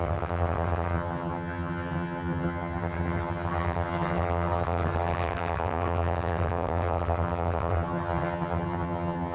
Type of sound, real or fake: fake